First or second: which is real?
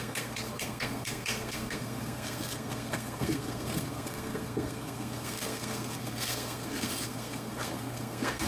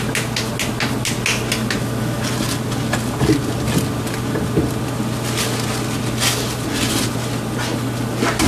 second